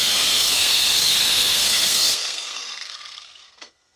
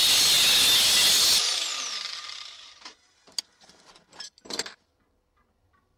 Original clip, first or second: second